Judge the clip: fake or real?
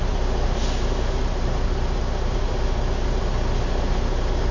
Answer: real